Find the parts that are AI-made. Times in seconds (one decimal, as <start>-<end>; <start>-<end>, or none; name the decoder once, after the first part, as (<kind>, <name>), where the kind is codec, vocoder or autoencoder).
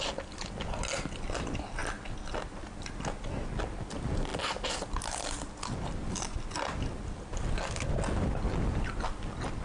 none